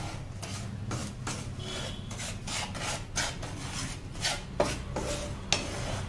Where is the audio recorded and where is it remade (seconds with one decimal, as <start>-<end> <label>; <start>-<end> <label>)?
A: 0.0-6.1 recorded